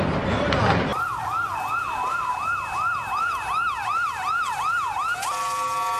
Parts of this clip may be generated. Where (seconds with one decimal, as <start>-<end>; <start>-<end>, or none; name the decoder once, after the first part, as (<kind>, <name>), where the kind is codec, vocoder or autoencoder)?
none